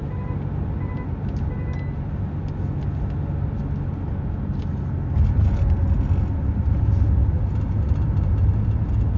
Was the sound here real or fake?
real